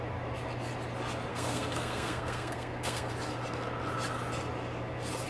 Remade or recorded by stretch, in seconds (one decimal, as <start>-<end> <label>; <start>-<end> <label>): 0.0-1.3 recorded; 1.3-3.1 remade; 3.1-5.3 recorded